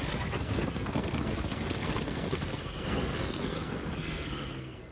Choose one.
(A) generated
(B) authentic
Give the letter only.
A